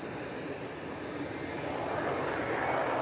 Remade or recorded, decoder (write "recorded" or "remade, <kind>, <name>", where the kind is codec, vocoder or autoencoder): recorded